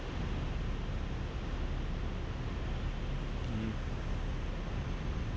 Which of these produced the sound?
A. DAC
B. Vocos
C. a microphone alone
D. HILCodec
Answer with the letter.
C